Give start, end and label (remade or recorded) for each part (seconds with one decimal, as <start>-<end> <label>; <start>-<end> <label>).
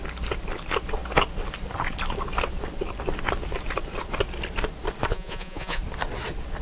0.0-5.1 recorded; 5.1-5.8 remade; 5.8-6.6 recorded